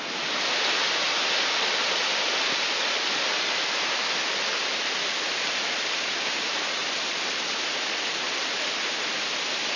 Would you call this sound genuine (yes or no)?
yes